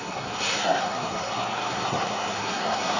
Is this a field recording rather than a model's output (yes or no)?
no